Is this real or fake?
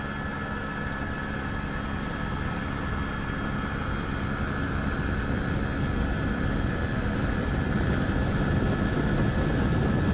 real